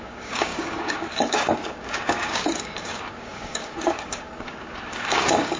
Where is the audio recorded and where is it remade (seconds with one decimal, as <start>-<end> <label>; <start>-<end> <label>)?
0.0-5.6 remade